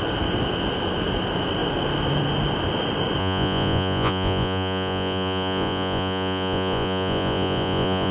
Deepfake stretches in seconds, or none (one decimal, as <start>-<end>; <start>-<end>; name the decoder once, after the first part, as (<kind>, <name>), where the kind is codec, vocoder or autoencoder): 3.2-8.1 (vocoder, Vocos)